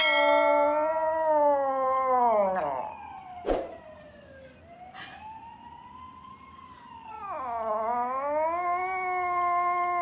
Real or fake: real